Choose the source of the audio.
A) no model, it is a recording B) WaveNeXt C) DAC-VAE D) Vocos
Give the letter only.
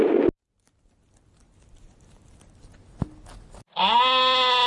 A